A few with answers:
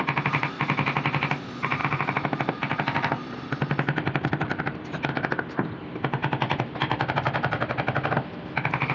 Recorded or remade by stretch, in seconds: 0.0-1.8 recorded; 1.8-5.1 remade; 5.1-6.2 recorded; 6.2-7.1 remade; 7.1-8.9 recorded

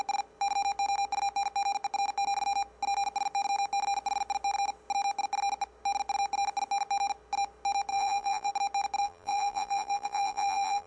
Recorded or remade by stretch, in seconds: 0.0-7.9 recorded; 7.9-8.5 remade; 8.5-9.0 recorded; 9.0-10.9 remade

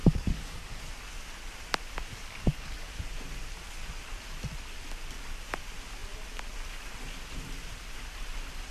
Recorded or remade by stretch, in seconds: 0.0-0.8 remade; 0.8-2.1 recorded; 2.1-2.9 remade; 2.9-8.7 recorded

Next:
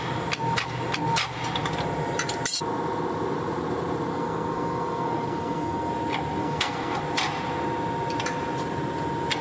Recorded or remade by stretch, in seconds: 0.0-4.1 recorded; 4.1-5.9 remade; 5.9-6.4 recorded; 6.4-7.0 remade; 7.0-9.4 recorded